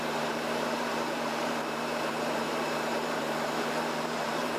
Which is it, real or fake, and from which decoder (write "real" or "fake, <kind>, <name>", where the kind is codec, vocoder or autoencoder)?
fake, vocoder, BigVGAN v2